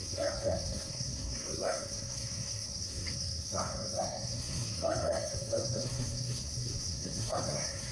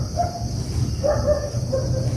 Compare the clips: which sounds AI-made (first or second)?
first